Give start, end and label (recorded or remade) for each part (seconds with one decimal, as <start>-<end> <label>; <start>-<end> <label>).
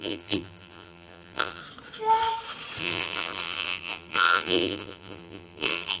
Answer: 0.0-1.6 remade; 1.6-2.8 recorded; 2.8-6.0 remade